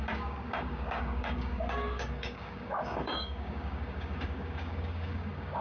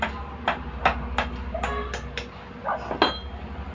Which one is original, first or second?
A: second